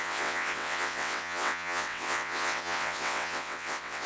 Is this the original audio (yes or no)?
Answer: no